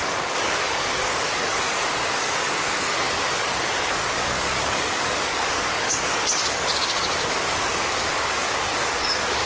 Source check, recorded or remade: remade